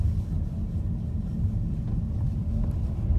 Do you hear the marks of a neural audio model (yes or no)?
no